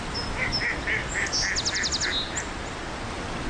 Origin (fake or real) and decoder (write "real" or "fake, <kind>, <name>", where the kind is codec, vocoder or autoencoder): real